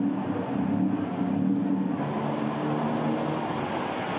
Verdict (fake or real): real